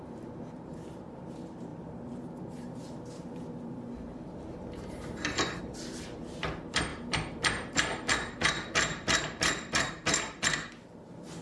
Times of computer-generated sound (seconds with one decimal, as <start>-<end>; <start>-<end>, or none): 0.0-11.4